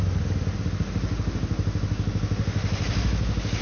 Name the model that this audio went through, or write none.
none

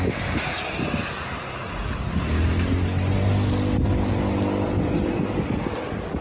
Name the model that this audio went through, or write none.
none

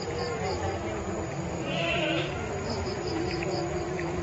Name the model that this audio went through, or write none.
none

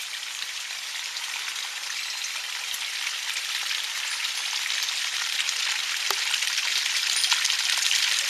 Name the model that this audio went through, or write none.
none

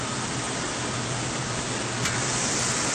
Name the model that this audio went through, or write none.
none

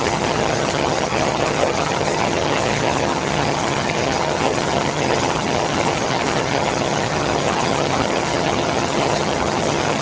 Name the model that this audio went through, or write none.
vocoder, HiFi-GAN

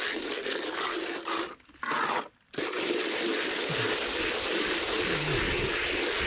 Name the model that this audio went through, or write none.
none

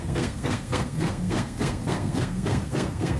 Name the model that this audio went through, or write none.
codec, SNAC